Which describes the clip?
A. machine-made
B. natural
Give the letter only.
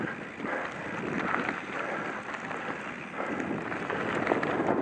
B